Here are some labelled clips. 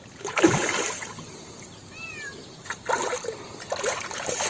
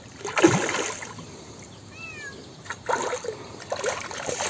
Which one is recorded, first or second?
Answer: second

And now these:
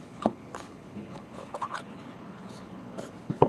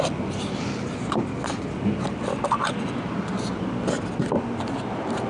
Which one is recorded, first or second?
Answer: second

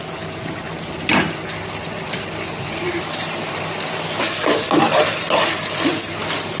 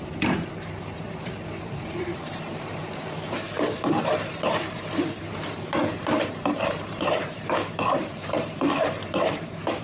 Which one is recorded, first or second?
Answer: first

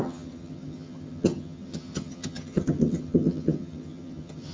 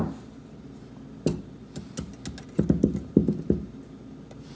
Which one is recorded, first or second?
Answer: second